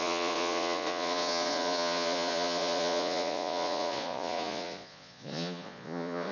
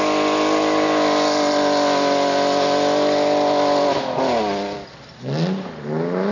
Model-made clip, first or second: first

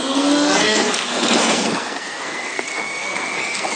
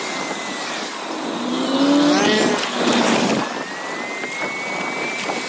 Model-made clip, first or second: first